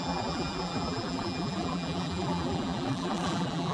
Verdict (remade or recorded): remade